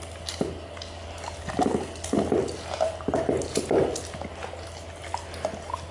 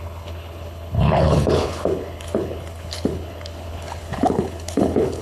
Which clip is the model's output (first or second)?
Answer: second